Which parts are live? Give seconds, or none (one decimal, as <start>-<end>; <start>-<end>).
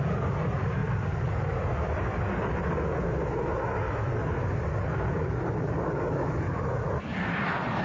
0.0-7.8